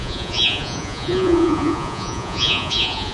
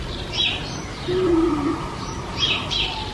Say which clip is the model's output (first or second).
first